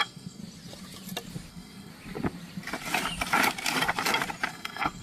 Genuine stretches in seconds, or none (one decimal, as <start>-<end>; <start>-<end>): 0.4-1.5; 1.9-4.5